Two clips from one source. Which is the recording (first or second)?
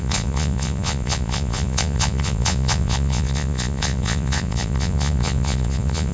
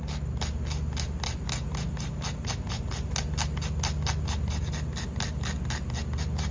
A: second